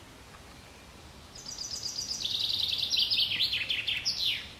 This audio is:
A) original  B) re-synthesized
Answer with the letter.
A